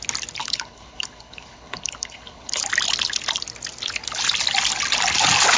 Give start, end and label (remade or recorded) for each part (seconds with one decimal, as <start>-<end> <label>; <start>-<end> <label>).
0.0-0.4 recorded; 0.4-2.6 remade; 2.6-5.6 recorded